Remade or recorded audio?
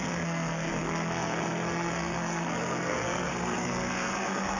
remade